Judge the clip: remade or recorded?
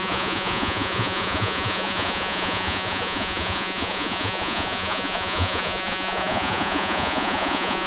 remade